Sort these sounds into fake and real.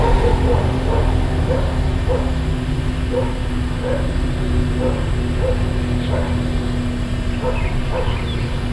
real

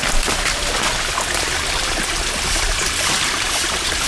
real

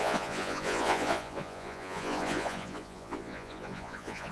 fake